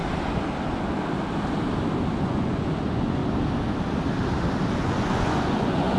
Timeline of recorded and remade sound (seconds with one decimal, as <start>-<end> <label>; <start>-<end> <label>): 0.0-2.2 recorded; 2.2-3.2 remade; 3.2-4.7 recorded; 4.7-6.0 remade